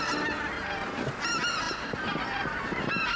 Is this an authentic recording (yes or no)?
yes